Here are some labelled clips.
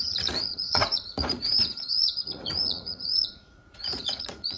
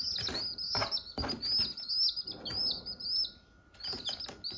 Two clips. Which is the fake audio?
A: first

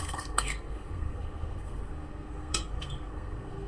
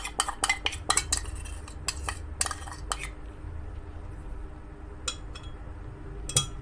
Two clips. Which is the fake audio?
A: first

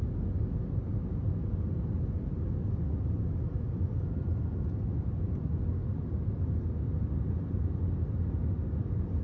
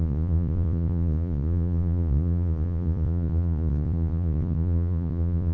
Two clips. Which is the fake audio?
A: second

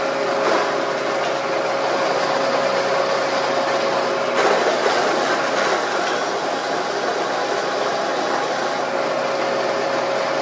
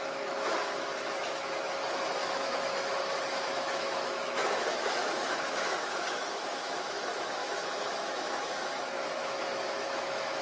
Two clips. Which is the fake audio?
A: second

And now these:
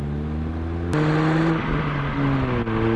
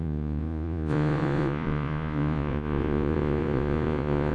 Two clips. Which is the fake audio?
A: second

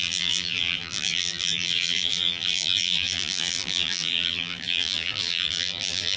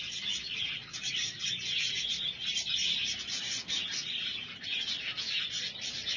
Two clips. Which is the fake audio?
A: first